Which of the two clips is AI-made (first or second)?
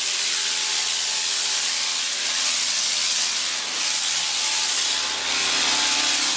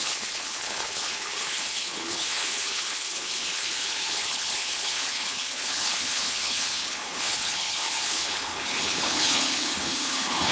second